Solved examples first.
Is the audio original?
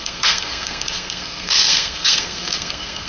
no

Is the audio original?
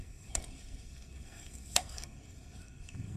no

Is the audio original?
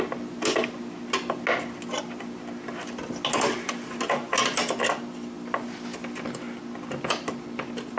yes